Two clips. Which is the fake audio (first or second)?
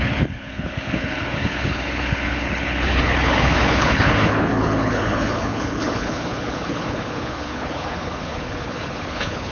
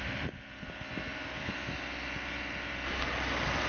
first